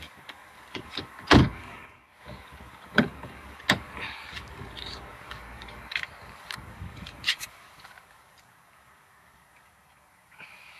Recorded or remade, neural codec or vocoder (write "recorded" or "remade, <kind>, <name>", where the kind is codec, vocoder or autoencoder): remade, codec, DAC